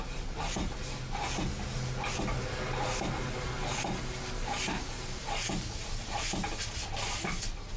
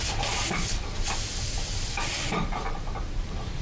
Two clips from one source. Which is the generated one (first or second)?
second